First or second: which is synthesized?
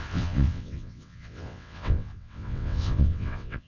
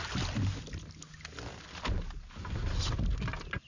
first